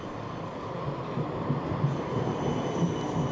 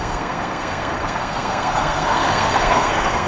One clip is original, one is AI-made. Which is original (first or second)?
first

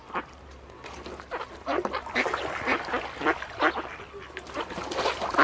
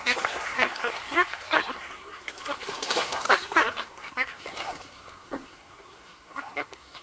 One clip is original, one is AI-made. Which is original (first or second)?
first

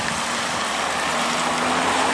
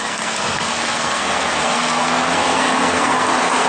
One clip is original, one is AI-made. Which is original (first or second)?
first